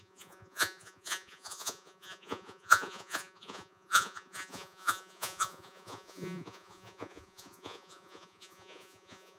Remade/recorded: remade